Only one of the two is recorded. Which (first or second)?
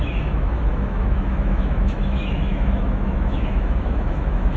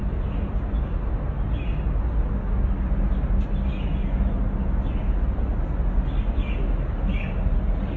second